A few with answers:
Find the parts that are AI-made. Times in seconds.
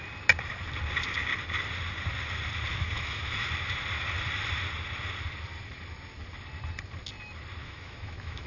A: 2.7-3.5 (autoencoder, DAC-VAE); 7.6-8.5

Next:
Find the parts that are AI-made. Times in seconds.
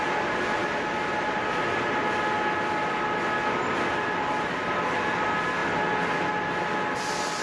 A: none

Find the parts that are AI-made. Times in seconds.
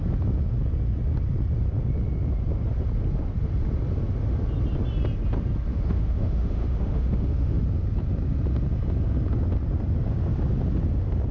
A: 5.7-7.6 (autoencoder, DAC-VAE)